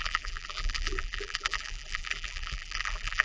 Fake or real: fake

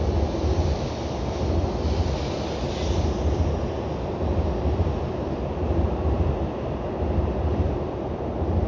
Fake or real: real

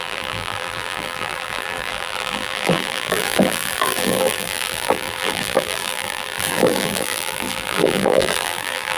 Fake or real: fake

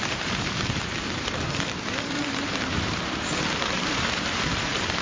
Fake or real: fake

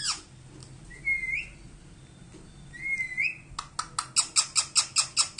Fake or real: real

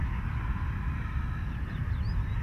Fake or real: real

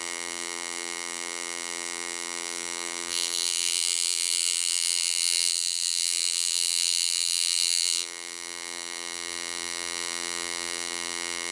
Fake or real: fake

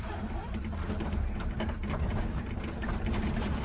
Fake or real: fake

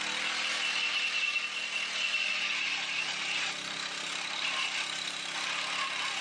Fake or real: fake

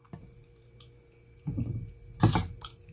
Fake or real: fake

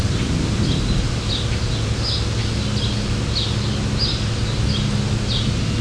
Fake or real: real